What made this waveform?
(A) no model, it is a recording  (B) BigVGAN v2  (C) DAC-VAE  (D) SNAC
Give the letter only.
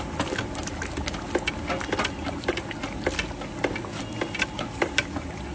A